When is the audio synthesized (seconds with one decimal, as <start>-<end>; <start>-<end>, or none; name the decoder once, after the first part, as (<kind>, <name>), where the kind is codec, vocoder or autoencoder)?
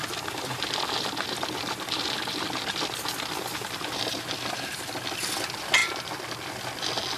none